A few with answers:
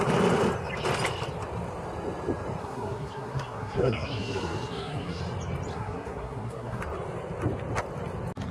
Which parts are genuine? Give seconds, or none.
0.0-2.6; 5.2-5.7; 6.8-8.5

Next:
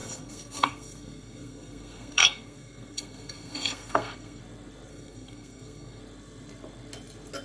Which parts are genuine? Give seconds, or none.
4.4-4.9; 6.0-7.4

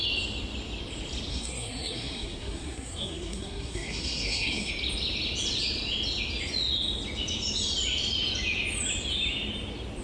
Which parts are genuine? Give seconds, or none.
0.0-1.3; 4.7-10.0

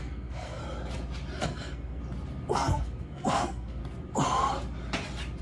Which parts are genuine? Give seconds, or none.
0.6-1.4; 2.0-2.5; 3.8-5.4

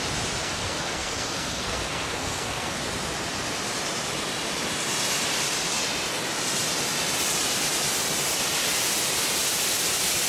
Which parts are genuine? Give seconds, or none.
0.0-0.4; 2.8-10.3

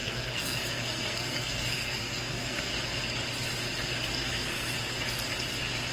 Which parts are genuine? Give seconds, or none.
2.7-4.2; 4.8-5.9

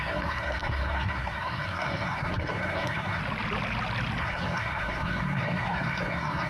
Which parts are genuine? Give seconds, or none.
3.2-4.2

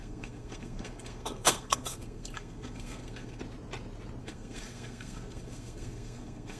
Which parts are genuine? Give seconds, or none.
3.4-4.2